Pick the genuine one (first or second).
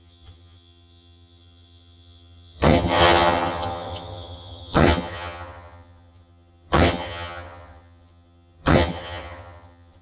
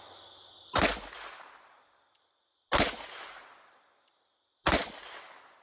second